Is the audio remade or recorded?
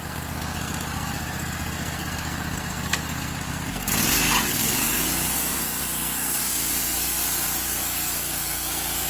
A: remade